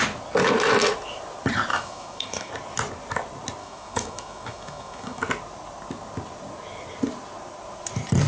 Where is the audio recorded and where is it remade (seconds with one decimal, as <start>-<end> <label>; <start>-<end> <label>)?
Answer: 0.0-1.7 recorded; 1.7-2.5 remade; 2.5-3.6 recorded; 3.6-5.2 remade; 5.2-8.3 recorded